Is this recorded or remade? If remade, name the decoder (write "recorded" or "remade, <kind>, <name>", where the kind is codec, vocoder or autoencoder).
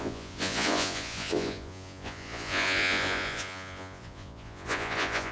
remade, vocoder, Vocos